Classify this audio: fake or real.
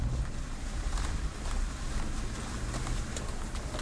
real